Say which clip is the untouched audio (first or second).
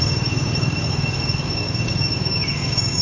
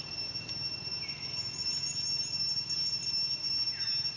second